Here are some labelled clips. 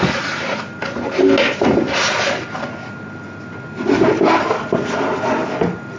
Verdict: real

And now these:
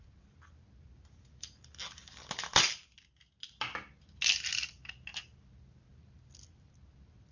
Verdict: real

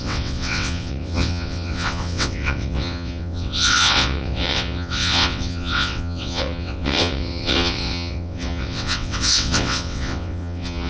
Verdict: fake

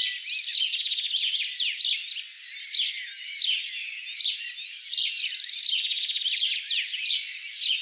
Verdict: real